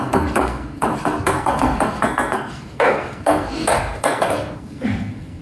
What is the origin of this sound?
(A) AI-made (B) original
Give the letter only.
A